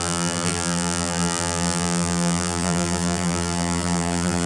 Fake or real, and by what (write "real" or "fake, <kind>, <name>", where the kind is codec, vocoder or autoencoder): fake, vocoder, BigVGAN v2